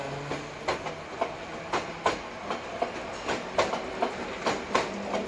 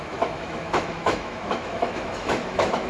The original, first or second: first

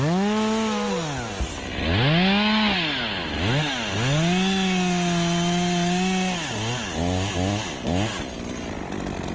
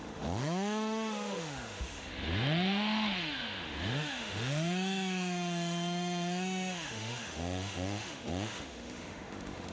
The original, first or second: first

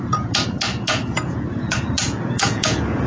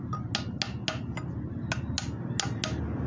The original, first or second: second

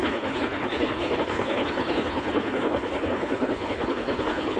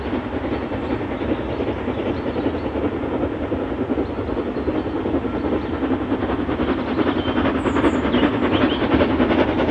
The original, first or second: second